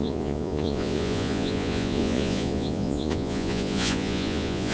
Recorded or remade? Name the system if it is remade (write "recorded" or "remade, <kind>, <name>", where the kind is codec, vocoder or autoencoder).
remade, vocoder, Vocos